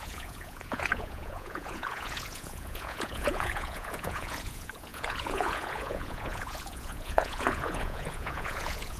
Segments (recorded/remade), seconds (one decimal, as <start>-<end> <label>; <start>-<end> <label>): 0.0-9.0 remade